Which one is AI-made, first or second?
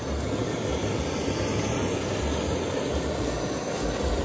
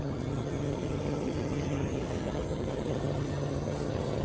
second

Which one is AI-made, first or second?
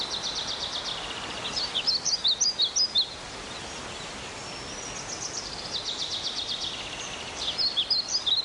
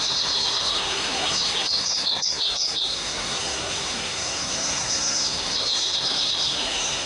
second